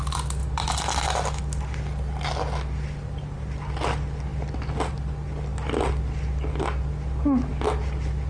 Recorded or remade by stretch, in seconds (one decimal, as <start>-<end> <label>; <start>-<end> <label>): 0.0-8.3 recorded